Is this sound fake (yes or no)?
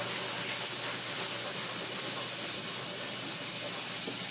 no